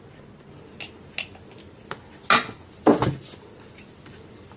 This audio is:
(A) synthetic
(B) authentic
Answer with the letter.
B